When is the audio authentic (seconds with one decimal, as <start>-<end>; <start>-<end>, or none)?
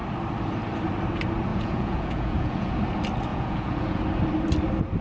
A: 0.0-1.5; 2.8-3.3; 4.0-5.0